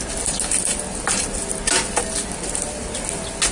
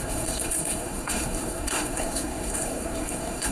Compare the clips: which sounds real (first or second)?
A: first